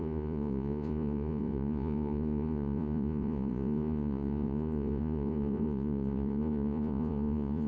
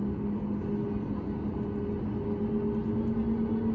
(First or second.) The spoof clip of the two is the first